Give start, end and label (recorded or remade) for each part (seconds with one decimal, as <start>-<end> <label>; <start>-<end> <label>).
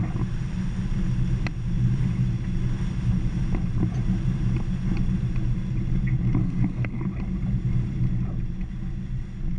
0.0-6.4 recorded; 6.4-7.0 remade; 7.0-9.6 recorded